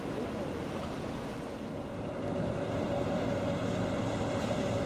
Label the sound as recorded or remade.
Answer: recorded